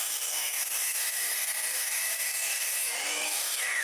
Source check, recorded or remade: remade